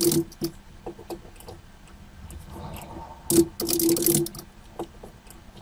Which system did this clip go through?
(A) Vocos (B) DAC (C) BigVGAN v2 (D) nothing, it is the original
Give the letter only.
D